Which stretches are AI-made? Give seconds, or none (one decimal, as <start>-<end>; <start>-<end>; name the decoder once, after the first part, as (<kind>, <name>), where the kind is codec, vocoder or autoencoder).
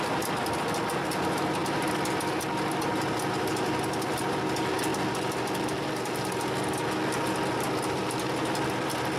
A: none